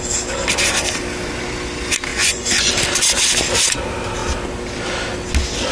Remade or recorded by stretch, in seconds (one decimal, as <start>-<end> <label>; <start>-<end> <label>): 0.0-2.1 recorded; 2.1-2.7 remade; 2.7-5.7 recorded